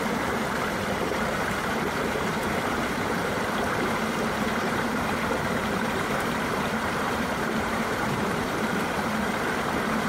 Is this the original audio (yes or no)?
no